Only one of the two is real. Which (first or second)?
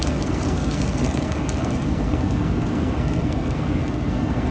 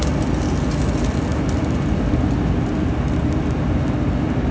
second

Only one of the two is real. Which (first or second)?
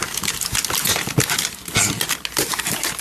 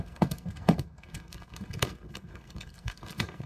first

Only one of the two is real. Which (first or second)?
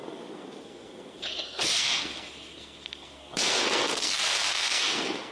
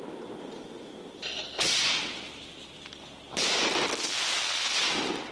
second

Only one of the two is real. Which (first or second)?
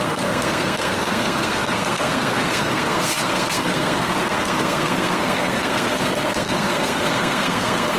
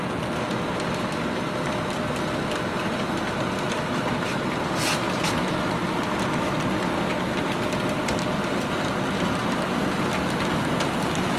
second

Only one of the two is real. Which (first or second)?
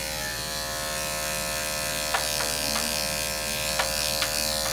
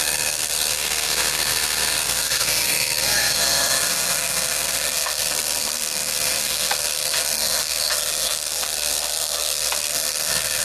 first